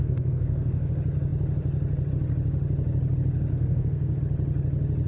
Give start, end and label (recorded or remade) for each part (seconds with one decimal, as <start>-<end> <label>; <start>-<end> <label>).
0.0-0.9 remade; 0.9-3.5 recorded; 3.5-4.2 remade; 4.2-5.1 recorded